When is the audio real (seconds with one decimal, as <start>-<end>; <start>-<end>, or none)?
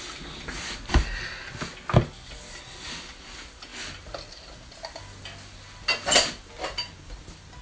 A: 0.0-7.6